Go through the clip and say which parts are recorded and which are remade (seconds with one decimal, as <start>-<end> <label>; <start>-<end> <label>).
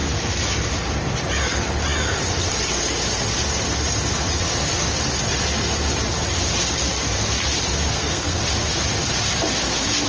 0.0-7.9 recorded; 7.9-8.4 remade; 8.4-10.1 recorded